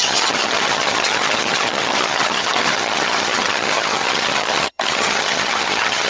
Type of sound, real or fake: fake